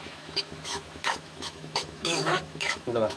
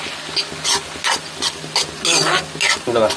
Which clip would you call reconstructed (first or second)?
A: first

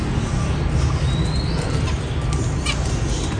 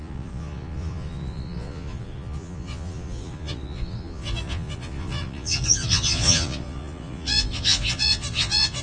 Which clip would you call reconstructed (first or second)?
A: second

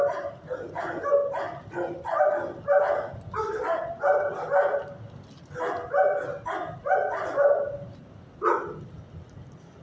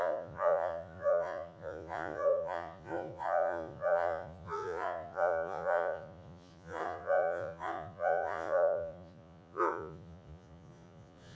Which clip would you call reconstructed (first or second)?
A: second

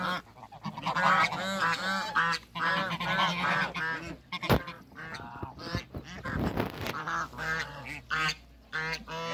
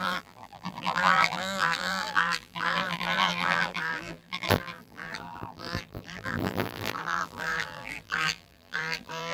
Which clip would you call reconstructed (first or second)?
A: second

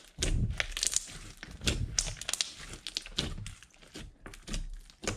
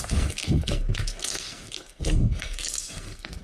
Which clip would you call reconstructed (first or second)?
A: second